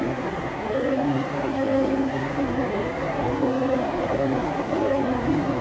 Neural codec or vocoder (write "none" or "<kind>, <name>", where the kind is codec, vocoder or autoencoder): codec, SNAC